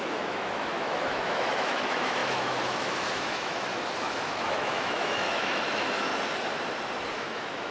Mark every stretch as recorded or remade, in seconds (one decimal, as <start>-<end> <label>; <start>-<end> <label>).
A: 0.0-6.1 remade; 6.1-7.1 recorded; 7.1-7.7 remade